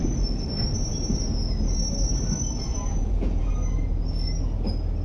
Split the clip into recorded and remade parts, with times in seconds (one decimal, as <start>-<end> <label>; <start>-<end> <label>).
0.0-2.7 recorded; 2.7-3.5 remade; 3.5-5.0 recorded